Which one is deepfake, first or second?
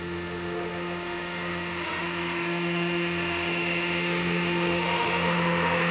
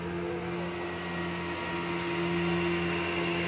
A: first